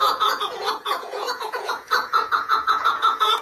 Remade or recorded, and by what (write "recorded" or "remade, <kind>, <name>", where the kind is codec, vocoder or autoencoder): remade, vocoder, Vocos